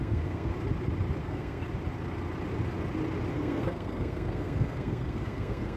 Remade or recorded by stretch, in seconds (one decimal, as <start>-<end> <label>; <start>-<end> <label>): 0.0-0.5 remade; 0.5-1.2 recorded; 1.2-1.6 remade; 1.6-3.3 recorded; 3.3-5.8 remade